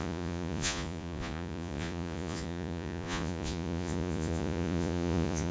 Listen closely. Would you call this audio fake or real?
fake